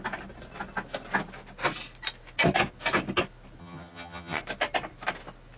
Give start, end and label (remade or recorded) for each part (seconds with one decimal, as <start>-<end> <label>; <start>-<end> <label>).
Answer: 0.0-3.6 recorded; 3.6-4.4 remade; 4.4-5.6 recorded